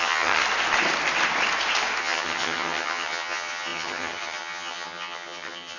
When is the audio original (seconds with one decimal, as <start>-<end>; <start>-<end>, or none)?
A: 0.4-2.0